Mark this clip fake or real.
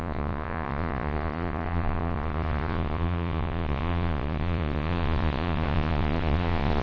fake